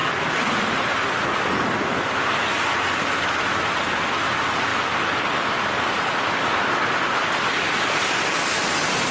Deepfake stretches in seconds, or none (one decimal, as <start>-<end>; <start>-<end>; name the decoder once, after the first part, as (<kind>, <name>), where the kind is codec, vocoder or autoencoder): 0.0-4.7 (vocoder, BigVGAN v2); 5.2-9.1